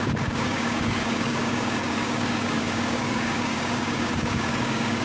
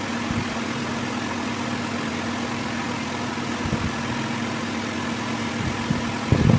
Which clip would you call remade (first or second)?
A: first